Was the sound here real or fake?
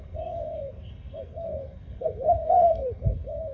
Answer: fake